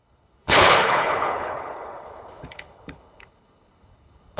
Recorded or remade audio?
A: remade